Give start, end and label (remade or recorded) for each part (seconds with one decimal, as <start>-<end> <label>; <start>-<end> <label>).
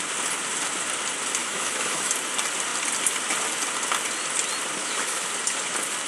0.0-1.4 recorded; 1.4-2.1 remade; 2.1-4.8 recorded; 4.8-5.3 remade; 5.3-6.1 recorded